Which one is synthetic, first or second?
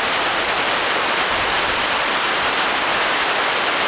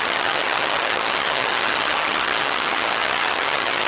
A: second